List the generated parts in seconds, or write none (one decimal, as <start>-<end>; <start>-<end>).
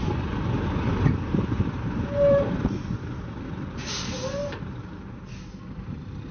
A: 0.9-3.4; 4.4-6.3